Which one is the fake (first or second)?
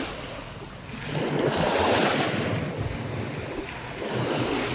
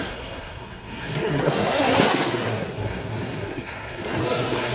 second